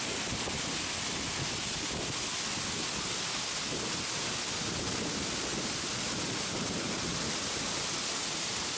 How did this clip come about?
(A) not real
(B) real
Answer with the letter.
B